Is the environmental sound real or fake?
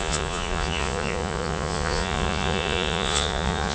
fake